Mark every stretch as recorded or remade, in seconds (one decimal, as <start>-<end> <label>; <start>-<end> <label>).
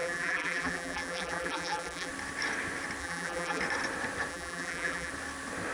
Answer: 0.0-2.1 remade; 2.1-3.0 recorded; 3.0-3.6 remade; 3.6-4.3 recorded; 4.3-5.1 remade; 5.1-5.7 recorded